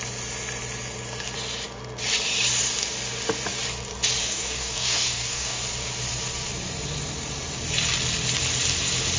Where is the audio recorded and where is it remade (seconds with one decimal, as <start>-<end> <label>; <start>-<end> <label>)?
0.0-4.2 recorded; 4.2-5.6 remade; 5.6-9.2 recorded